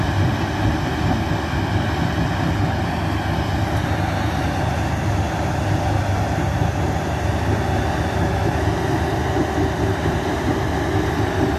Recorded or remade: recorded